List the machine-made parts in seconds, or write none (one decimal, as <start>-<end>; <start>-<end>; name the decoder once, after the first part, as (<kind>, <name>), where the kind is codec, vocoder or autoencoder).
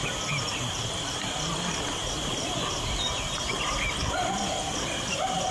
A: 0.0-5.5 (vocoder, BigVGAN v2)